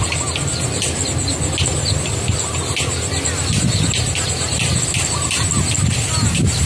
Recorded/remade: recorded